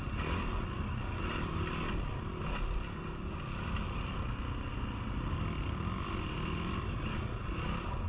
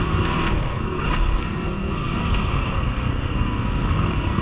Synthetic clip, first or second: second